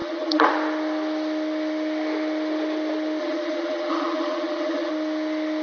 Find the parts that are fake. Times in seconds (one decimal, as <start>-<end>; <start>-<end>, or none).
0.0-0.5; 3.2-4.9